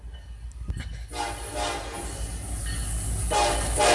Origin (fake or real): real